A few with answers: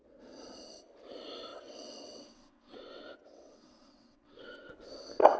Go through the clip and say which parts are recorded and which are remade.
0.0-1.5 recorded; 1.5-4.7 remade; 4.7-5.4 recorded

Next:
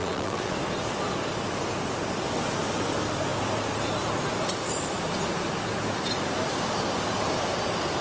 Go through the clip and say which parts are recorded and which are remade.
0.0-0.5 remade; 0.5-8.0 recorded

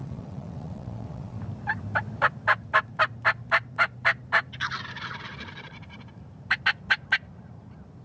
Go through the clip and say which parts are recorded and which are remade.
0.0-1.4 remade; 1.4-8.0 recorded